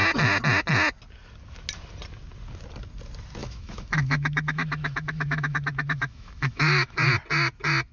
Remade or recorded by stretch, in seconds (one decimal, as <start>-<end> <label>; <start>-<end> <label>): 0.0-3.4 recorded; 3.4-7.1 remade; 7.1-7.9 recorded